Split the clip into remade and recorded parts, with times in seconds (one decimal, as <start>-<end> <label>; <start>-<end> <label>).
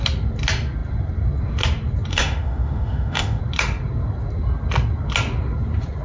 0.0-2.1 recorded; 2.1-3.4 remade; 3.4-6.0 recorded